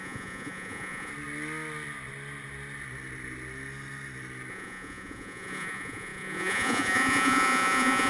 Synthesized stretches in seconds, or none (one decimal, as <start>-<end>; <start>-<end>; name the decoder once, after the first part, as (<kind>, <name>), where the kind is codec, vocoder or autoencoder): 0.0-1.1 (vocoder, Vocos); 4.5-8.1